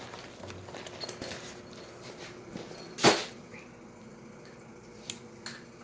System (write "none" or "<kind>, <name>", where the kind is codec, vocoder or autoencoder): none